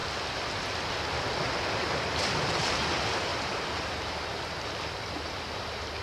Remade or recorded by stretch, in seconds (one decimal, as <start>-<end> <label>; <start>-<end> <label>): 0.0-3.3 recorded; 3.3-4.5 remade; 4.5-6.0 recorded